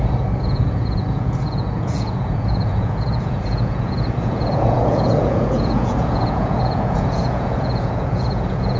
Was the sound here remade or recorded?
remade